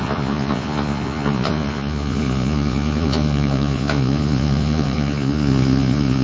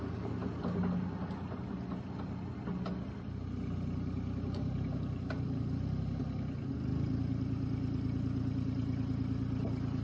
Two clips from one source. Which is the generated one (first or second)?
first